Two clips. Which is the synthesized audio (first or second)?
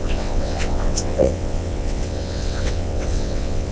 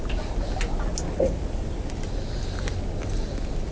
first